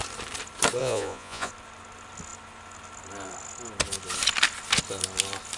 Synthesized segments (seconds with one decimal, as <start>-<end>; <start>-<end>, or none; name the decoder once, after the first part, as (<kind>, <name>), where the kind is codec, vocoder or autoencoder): 0.8-1.5 (vocoder, Vocos)